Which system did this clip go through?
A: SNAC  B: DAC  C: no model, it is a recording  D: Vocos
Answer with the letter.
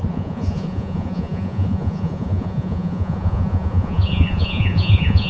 D